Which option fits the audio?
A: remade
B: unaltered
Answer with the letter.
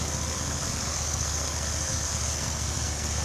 A